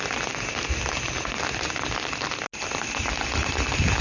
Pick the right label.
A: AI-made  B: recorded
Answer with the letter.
B